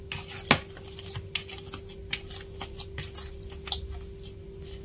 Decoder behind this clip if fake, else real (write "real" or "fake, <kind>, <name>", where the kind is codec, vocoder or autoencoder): real